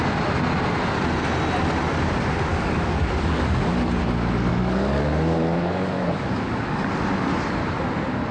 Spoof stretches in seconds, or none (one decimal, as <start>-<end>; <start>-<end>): 2.5-3.7; 4.5-6.9